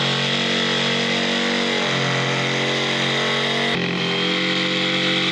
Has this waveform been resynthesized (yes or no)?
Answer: no